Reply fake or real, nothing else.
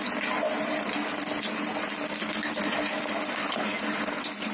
real